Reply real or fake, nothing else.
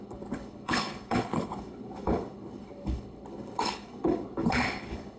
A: fake